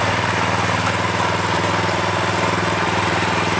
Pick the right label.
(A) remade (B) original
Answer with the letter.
B